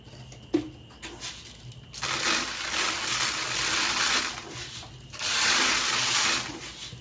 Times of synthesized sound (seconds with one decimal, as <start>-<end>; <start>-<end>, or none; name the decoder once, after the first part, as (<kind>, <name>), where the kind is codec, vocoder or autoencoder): none